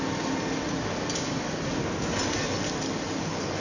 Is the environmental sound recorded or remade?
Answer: recorded